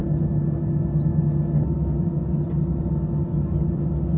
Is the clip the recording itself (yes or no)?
yes